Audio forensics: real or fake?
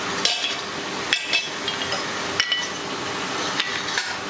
real